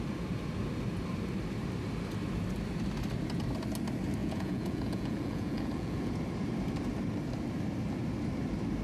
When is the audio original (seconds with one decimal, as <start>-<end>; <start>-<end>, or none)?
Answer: 0.0-4.2; 6.1-8.8